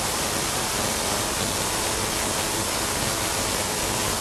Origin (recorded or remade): recorded